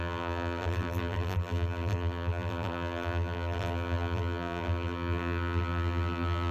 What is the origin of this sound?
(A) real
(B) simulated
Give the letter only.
B